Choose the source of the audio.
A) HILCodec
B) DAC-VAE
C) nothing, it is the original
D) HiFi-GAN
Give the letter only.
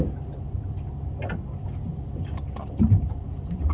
C